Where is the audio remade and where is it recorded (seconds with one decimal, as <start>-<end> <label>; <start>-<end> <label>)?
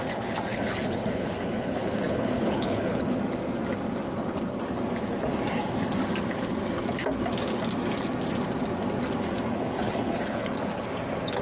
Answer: 0.0-0.5 recorded; 0.5-3.2 remade; 3.2-9.5 recorded; 9.5-10.6 remade; 10.6-11.4 recorded